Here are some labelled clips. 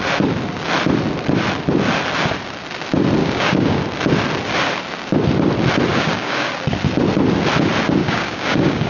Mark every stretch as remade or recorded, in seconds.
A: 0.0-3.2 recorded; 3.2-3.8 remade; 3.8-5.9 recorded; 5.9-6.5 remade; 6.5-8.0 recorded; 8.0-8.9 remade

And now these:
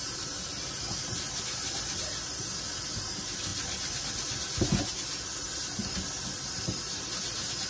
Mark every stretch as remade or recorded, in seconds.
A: 0.0-7.7 recorded

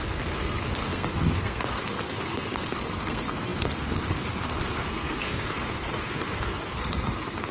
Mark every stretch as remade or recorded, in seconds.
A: 0.0-7.5 remade